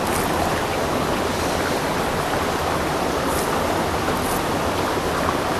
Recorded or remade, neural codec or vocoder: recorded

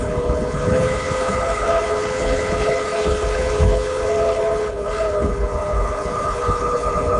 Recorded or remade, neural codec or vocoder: remade, codec, HILCodec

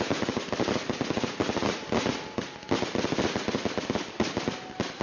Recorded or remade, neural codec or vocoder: recorded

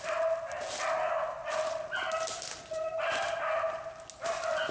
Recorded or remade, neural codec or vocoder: recorded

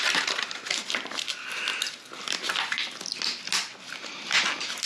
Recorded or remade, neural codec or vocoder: recorded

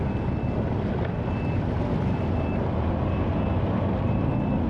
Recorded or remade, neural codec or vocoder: recorded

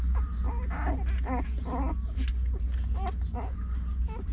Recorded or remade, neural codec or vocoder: recorded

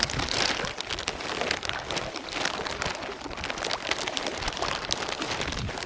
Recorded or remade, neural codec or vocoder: recorded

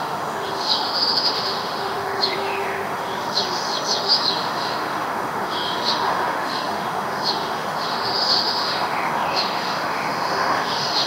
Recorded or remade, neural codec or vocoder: remade, autoencoder, DAC-VAE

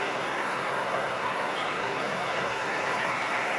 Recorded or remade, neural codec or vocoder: remade, codec, SNAC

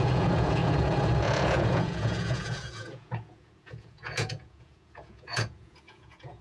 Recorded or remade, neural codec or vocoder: remade, vocoder, Vocos